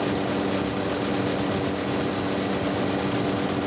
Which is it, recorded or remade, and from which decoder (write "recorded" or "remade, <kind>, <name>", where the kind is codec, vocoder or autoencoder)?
recorded